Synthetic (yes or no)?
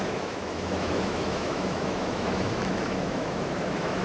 yes